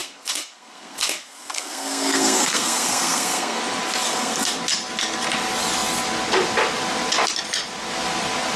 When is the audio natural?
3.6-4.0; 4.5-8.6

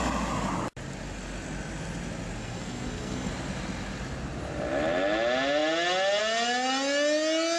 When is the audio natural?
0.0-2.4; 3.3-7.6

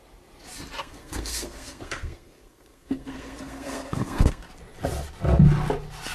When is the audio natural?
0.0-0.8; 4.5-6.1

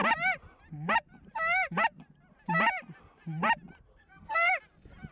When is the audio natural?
0.0-3.9; 4.5-5.1